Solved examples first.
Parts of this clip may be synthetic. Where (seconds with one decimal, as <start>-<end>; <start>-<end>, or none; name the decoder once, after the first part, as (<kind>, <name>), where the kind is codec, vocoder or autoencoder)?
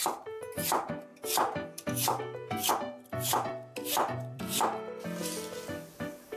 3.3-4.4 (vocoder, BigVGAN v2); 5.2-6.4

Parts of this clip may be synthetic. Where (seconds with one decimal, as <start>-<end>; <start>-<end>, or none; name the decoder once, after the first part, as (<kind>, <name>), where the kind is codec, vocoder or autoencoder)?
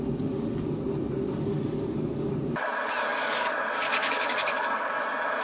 1.5-2.3 (codec, DAC); 3.1-5.0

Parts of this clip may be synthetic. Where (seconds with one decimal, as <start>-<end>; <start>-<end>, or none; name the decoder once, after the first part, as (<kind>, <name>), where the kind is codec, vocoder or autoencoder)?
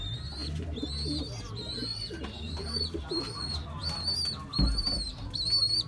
3.8-5.9 (vocoder, BigVGAN v2)